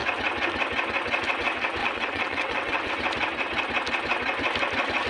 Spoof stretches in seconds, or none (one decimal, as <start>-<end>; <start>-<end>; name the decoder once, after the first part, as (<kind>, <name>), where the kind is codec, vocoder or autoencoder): 1.8-2.9 (vocoder, WaveNeXt)